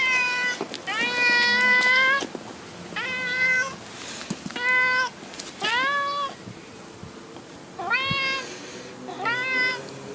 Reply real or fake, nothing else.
real